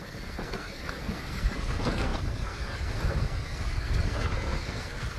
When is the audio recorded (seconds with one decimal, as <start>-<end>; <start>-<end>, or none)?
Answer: none